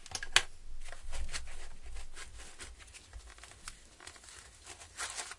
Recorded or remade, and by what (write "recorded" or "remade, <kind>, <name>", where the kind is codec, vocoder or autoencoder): recorded